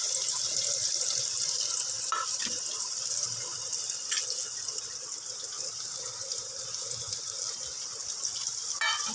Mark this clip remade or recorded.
recorded